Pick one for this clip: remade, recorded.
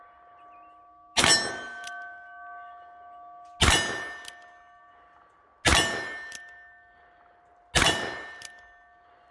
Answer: recorded